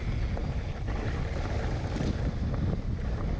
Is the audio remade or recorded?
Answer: recorded